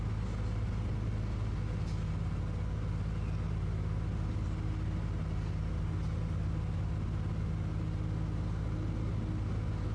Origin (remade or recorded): recorded